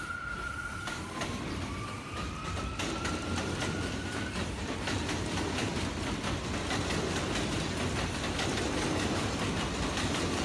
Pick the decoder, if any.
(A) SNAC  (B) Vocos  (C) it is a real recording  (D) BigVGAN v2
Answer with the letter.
C